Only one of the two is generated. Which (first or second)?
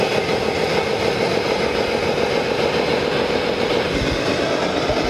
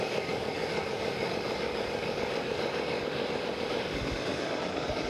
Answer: second